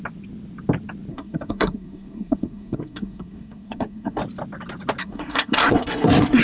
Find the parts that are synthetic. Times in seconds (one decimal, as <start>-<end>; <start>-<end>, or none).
1.1-4.2; 5.0-6.4